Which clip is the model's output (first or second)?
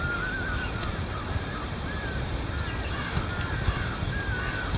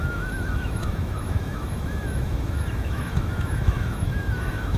second